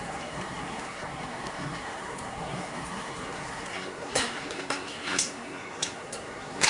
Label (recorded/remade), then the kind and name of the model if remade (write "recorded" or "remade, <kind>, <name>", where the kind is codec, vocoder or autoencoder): remade, codec, SNAC